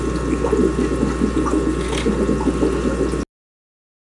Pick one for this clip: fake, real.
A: real